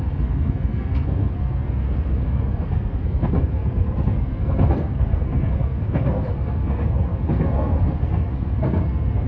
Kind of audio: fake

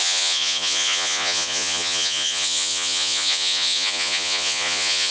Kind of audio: fake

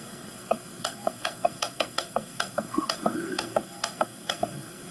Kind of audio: fake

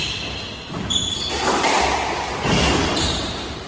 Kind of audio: real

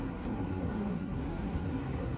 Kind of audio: fake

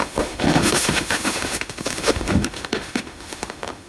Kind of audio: fake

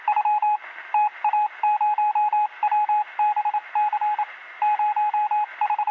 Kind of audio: real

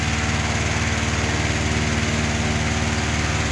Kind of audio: real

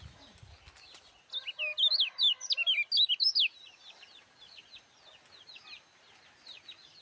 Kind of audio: real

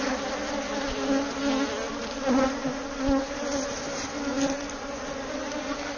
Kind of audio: real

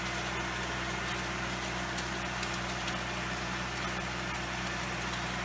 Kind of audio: real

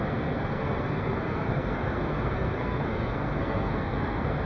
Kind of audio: fake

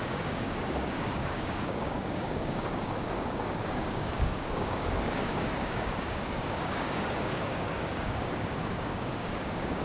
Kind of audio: fake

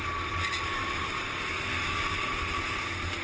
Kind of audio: real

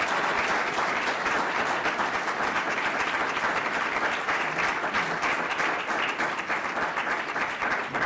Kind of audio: real